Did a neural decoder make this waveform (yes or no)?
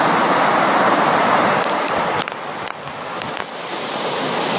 no